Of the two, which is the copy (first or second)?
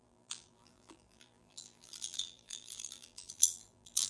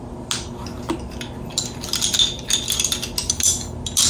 first